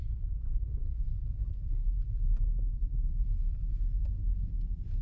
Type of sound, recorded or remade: remade